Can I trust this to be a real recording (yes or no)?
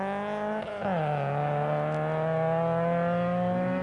yes